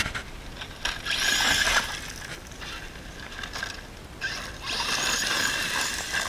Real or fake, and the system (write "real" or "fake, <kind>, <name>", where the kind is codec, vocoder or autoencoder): real